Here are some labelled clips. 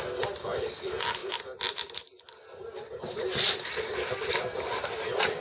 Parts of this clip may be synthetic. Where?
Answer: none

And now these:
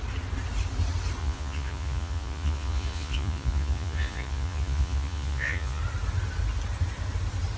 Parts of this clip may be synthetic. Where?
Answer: 1.2-5.8 (vocoder, Vocos)

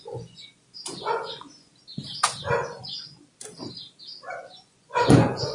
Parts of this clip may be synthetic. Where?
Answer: 0.0-1.7 (vocoder, Vocos); 4.2-5.5